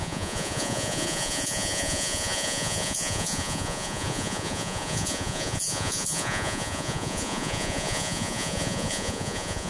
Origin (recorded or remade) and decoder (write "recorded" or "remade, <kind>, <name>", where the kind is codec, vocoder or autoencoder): remade, vocoder, Vocos